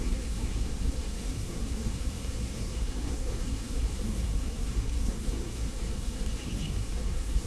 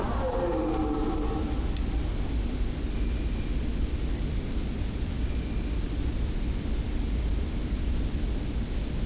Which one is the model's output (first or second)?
first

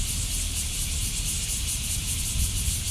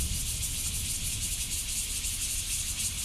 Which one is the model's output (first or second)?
first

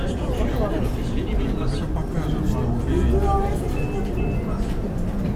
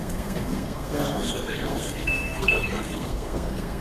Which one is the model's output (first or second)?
second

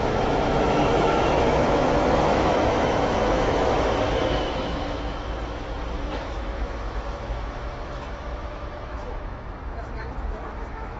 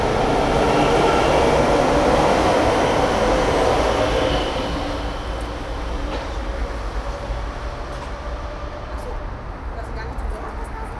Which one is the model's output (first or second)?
first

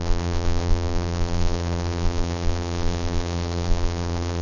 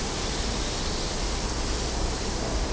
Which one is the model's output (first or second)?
first